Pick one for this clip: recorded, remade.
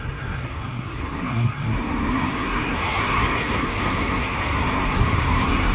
remade